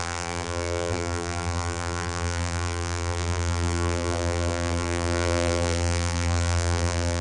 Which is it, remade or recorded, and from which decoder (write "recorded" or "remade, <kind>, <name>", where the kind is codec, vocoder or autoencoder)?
remade, vocoder, BigVGAN v2